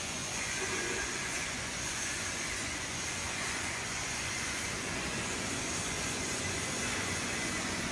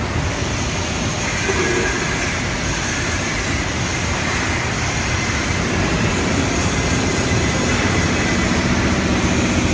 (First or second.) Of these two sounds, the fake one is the first